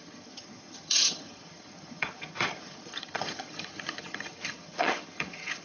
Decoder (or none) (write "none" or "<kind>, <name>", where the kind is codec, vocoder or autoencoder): vocoder, HiFi-GAN